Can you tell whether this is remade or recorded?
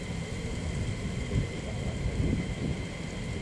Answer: recorded